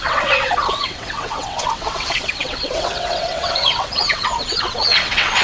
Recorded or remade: remade